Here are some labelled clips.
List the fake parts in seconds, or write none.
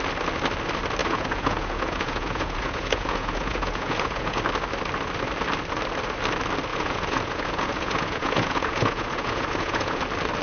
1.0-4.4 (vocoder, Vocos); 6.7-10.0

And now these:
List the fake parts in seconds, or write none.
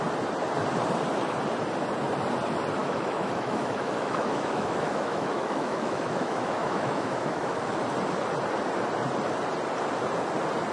2.8-7.8 (autoencoder, DAC-VAE)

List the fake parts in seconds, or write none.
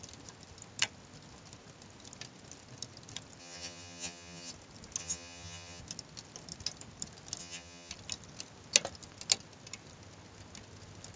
3.4-4.5 (vocoder, HiFi-GAN); 5.0-5.8; 7.4-7.9